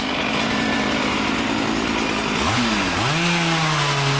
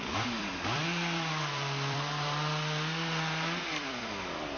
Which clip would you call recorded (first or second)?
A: first